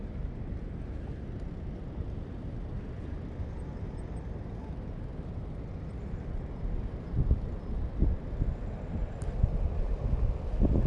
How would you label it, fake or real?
real